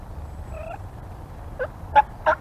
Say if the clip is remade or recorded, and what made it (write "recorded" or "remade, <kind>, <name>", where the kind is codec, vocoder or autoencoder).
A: recorded